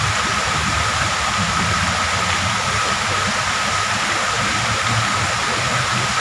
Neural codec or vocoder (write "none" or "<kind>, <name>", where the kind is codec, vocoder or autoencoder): none